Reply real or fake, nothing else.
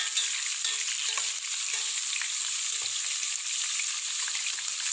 real